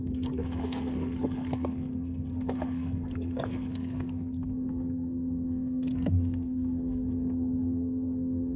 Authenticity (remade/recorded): remade